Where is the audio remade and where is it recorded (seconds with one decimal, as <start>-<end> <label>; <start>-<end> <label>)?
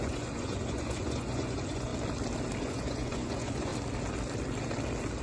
0.0-1.9 remade; 1.9-2.6 recorded; 2.6-3.7 remade; 3.7-5.2 recorded